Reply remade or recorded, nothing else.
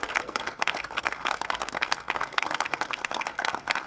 remade